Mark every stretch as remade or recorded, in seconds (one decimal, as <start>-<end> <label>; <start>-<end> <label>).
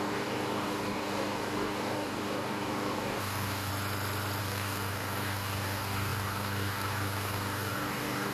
0.0-3.7 remade; 3.7-4.4 recorded; 4.4-8.3 remade